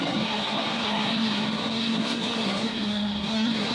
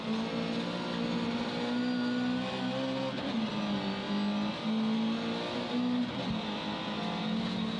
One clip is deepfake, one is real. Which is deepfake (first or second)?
first